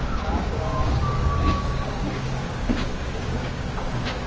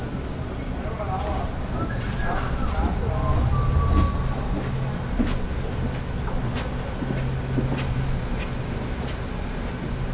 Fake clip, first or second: first